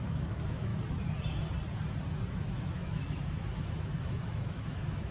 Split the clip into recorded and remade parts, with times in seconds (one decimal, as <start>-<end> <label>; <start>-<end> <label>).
0.0-0.7 remade; 0.7-2.3 recorded; 2.3-5.1 remade